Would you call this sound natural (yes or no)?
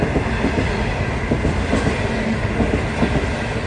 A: yes